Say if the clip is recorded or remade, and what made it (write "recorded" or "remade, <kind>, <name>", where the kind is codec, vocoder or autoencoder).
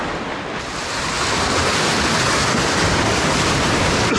recorded